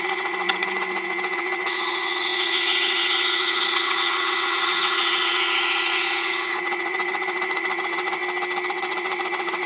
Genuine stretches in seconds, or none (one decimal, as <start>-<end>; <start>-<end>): 8.2-8.7